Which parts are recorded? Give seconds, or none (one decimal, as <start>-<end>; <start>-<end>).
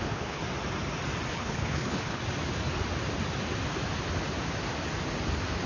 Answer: 0.4-1.3; 2.2-5.7